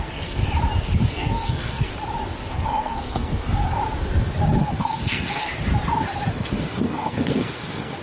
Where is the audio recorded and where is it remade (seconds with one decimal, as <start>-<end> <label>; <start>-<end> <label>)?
0.0-0.4 remade; 0.4-1.1 recorded; 1.1-1.9 remade; 1.9-2.5 recorded; 2.5-3.8 remade; 3.8-4.6 recorded; 4.6-5.5 remade; 5.5-6.3 recorded; 6.3-8.0 remade